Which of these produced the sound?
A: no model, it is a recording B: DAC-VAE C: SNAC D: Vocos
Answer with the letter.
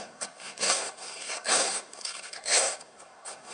C